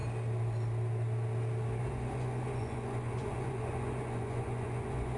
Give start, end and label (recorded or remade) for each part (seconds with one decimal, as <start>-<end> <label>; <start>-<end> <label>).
0.0-1.8 recorded; 1.8-5.2 remade